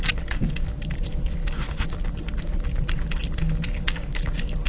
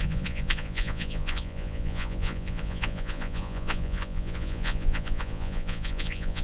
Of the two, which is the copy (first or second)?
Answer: second